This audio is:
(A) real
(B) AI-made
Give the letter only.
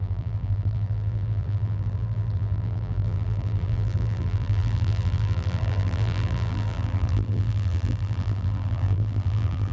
B